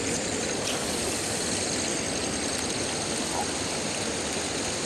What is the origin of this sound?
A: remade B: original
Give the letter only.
B